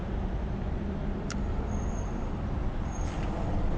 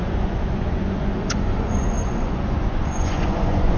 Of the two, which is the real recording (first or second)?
first